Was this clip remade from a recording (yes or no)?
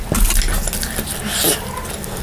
no